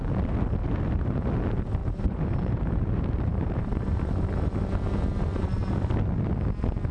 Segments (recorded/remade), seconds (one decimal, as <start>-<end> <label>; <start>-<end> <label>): 0.0-0.6 recorded; 0.6-1.2 remade; 1.2-1.8 recorded; 1.8-4.1 remade; 4.1-6.9 recorded